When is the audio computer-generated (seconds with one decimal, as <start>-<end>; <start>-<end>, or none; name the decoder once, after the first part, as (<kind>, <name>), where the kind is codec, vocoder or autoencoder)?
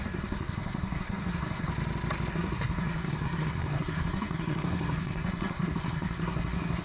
0.0-1.7 (codec, SNAC); 2.3-6.8